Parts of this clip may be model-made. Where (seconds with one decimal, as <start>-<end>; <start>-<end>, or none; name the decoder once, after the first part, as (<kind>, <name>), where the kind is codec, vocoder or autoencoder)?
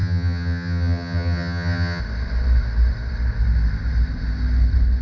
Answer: 0.0-2.0 (vocoder, HiFi-GAN)